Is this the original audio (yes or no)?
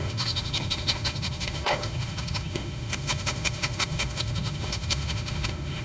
no